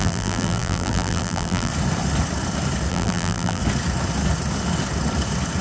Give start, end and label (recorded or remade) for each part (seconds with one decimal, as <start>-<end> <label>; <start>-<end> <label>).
0.0-1.7 remade; 1.7-2.9 recorded; 2.9-3.6 remade; 3.6-5.6 recorded